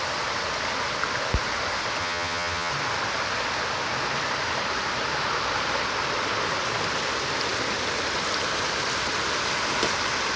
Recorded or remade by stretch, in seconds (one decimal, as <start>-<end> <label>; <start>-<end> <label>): 0.0-2.0 recorded; 2.0-2.7 remade; 2.7-10.4 recorded